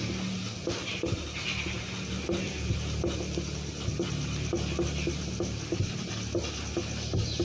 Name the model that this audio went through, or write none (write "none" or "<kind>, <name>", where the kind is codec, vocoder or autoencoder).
none